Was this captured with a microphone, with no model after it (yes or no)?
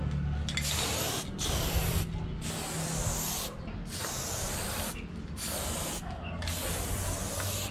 yes